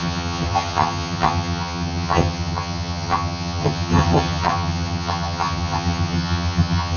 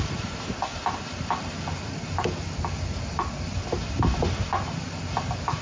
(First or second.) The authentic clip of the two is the second